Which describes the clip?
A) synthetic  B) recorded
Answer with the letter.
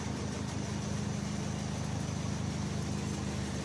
B